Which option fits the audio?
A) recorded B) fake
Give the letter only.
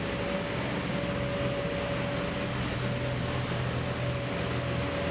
A